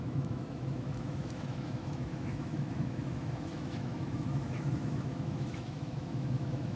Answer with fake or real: fake